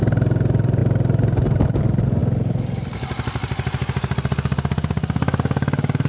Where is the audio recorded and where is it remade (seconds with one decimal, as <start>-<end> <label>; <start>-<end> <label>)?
0.0-6.1 recorded